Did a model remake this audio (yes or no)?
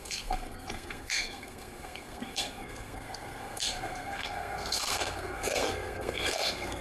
yes